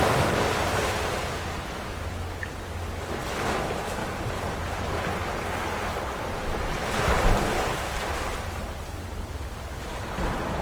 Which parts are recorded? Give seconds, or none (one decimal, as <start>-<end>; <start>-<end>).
0.0-4.0; 4.8-10.6